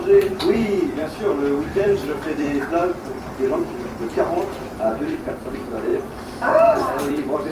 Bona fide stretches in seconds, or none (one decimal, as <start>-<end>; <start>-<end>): 1.0-1.7; 4.9-5.5; 5.9-7.0